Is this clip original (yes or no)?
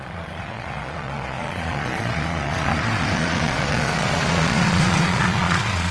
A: no